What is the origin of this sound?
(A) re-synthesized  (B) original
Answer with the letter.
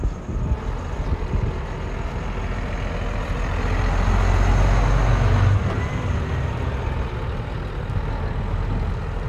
B